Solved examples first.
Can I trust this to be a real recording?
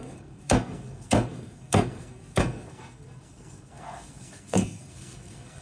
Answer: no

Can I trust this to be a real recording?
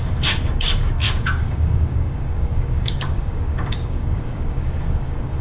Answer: no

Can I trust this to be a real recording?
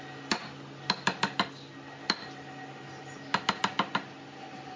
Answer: yes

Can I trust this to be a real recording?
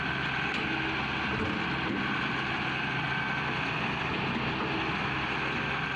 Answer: yes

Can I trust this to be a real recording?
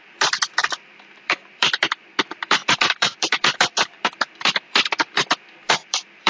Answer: no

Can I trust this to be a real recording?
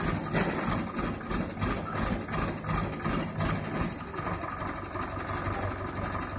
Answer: yes